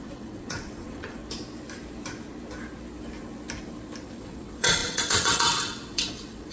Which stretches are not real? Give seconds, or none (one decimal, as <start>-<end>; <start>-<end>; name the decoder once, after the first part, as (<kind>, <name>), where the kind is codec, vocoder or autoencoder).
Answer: 0.0-1.2 (vocoder, WaveNeXt); 4.0-6.5